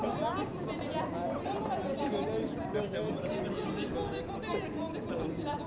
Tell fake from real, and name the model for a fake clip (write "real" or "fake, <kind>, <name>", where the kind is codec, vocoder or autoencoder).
real